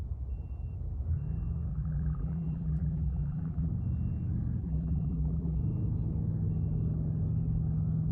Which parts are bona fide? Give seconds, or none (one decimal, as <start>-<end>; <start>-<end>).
0.0-1.7; 3.7-4.6; 5.6-8.1